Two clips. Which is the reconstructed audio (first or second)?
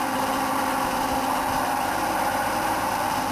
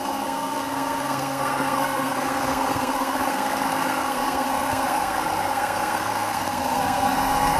second